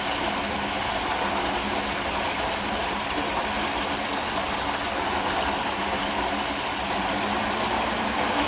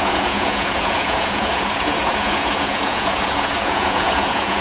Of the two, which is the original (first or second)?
first